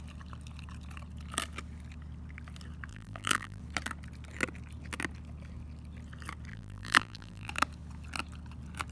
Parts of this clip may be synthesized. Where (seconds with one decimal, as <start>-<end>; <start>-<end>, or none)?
2.9-3.6; 6.5-7.5